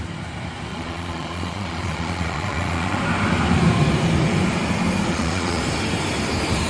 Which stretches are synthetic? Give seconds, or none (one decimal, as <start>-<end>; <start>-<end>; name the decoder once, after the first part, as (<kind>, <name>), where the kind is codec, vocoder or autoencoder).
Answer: 0.7-3.0 (vocoder, Vocos); 5.1-5.6